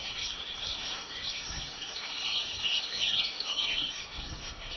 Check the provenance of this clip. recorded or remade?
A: remade